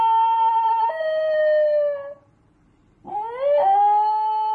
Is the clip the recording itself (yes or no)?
yes